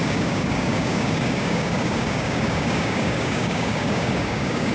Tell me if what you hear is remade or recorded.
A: remade